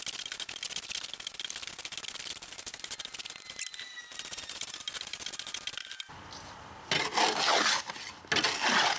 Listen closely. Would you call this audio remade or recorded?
recorded